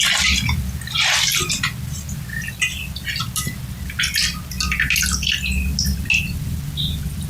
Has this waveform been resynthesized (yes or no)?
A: no